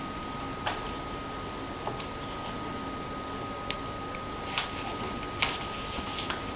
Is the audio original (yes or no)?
yes